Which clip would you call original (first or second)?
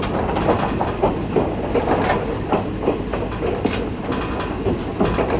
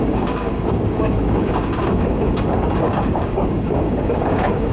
first